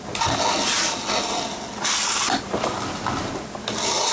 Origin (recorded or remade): recorded